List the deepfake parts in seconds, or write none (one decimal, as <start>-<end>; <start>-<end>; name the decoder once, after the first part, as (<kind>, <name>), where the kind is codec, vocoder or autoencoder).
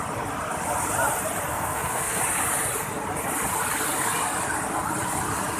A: 1.5-2.2 (codec, SNAC)